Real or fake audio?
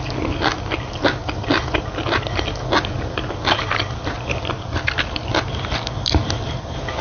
real